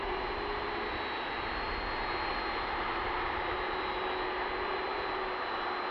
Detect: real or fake real